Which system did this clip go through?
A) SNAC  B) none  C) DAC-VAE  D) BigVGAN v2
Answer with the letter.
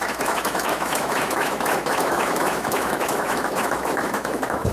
C